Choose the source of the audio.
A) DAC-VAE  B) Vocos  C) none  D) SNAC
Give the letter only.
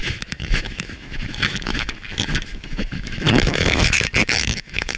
A